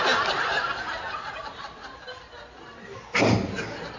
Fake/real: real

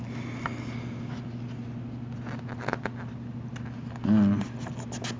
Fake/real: real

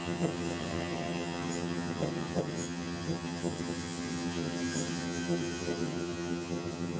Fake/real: fake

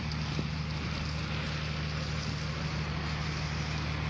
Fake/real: real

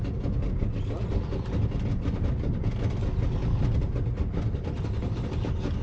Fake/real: real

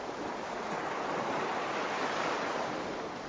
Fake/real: real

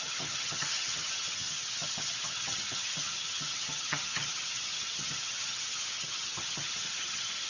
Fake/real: fake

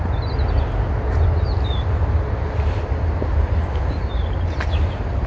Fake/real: real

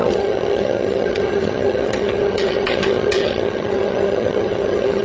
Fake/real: fake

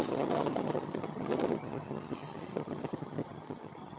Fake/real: fake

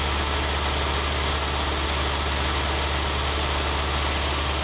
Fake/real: real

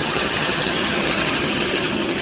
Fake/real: fake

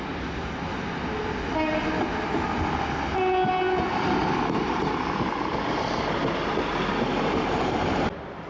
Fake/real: real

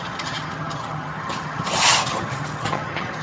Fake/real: fake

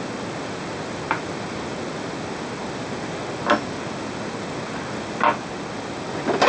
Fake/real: real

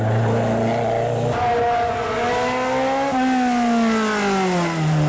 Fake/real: real